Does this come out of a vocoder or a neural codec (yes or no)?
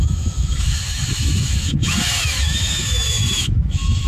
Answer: yes